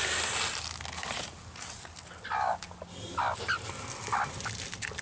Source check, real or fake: real